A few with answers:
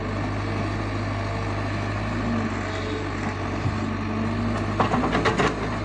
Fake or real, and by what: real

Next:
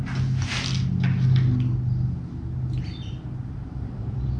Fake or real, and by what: real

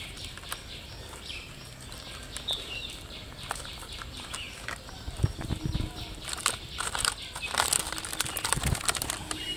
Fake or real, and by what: fake, vocoder, BigVGAN v2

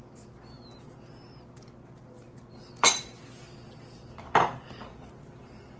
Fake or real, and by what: real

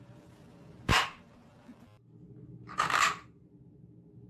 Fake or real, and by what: fake, vocoder, BigVGAN v2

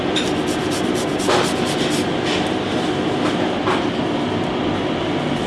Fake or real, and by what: real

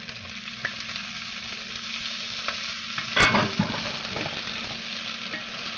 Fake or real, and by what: real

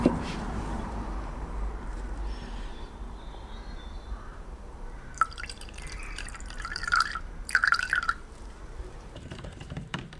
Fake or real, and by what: fake, vocoder, BigVGAN v2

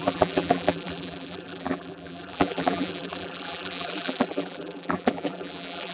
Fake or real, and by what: fake, vocoder, BigVGAN v2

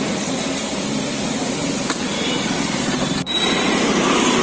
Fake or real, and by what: fake, vocoder, BigVGAN v2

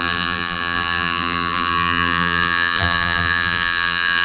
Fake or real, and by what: fake, vocoder, BigVGAN v2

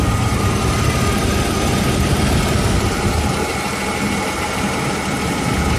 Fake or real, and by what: real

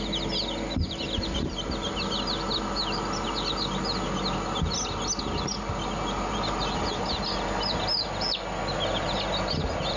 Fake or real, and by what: real